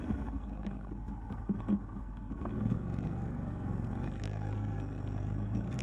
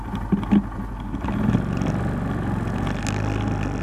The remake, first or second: first